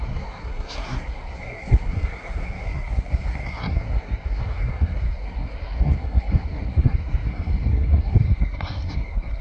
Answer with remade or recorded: remade